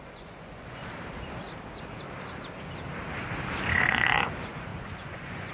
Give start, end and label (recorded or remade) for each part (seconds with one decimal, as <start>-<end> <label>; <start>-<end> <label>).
0.0-0.8 remade; 0.8-3.5 recorded; 3.5-5.5 remade